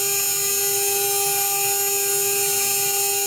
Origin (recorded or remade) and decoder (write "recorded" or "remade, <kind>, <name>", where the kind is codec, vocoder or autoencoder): recorded